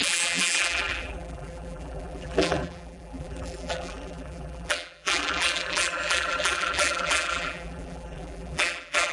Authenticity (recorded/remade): remade